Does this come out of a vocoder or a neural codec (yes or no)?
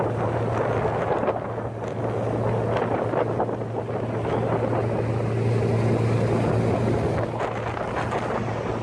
no